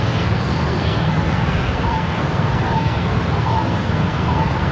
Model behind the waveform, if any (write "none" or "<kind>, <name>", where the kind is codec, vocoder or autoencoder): codec, SNAC